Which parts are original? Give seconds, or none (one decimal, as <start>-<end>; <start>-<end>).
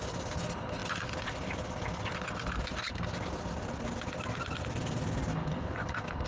0.0-6.3